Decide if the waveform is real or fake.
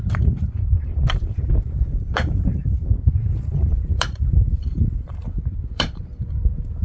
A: fake